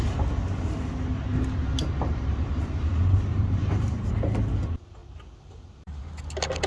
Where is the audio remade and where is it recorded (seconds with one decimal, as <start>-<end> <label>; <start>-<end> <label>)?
0.0-1.3 recorded; 1.3-2.5 remade; 2.5-3.3 recorded; 3.3-4.1 remade; 4.1-5.0 recorded; 5.0-6.0 remade; 6.0-6.7 recorded

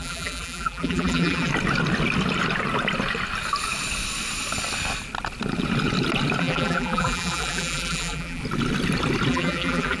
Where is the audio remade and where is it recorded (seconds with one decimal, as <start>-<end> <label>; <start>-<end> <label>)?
0.0-1.5 remade; 1.5-6.4 recorded; 6.4-8.4 remade; 8.4-9.3 recorded; 9.3-10.0 remade

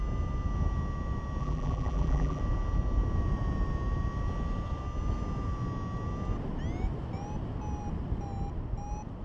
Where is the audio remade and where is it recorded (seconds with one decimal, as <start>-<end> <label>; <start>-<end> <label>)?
0.0-1.4 recorded; 1.4-2.4 remade; 2.4-9.2 recorded